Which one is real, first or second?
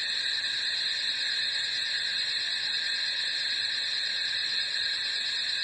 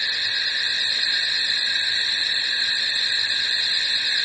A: second